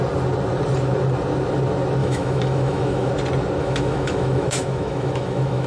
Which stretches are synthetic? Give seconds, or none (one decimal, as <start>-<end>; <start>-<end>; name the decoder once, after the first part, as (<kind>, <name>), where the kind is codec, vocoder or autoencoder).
2.0-3.1 (autoencoder, DAC-VAE); 3.6-5.7